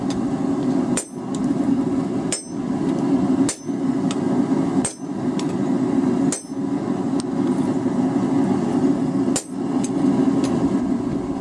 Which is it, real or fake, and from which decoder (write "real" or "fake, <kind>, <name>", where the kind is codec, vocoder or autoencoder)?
real